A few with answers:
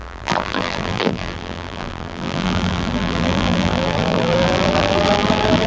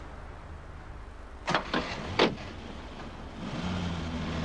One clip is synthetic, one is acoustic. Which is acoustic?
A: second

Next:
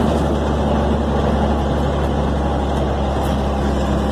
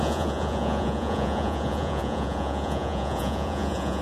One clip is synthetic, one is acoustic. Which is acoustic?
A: first